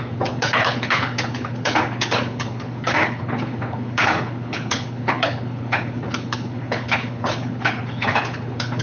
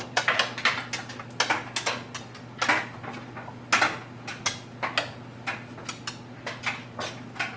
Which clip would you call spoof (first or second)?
first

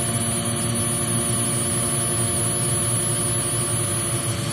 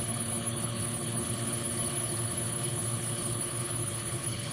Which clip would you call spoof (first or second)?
second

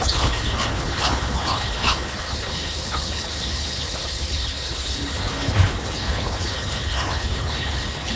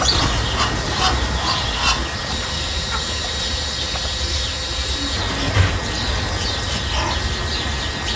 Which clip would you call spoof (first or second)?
first